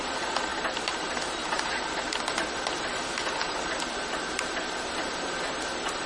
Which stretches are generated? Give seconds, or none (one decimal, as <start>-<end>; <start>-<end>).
none